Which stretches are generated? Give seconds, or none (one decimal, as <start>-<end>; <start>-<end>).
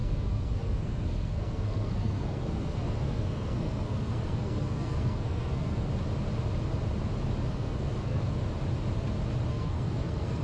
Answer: 0.0-5.9; 7.5-8.2; 9.5-10.4